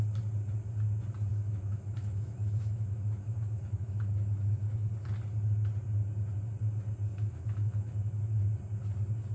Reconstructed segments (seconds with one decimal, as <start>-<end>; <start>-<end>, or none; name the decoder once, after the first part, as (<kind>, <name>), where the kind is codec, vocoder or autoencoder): 1.3-4.9 (autoencoder, DAC-VAE); 7.1-8.4